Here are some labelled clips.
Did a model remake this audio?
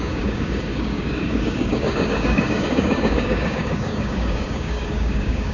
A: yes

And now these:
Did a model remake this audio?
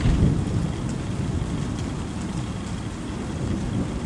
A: no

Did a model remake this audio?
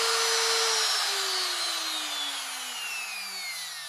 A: no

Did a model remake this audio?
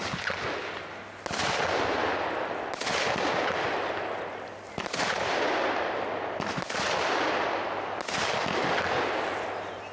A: no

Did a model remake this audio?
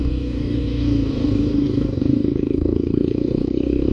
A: yes